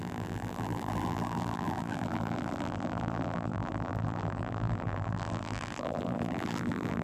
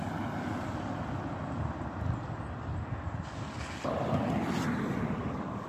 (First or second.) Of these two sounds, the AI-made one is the first